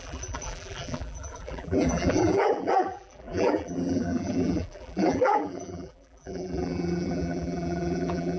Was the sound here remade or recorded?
remade